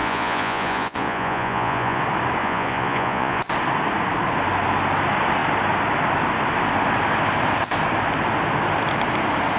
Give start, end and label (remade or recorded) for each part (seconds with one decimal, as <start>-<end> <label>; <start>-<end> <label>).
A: 0.0-2.0 remade; 2.0-2.4 recorded; 2.4-3.4 remade; 3.4-9.6 recorded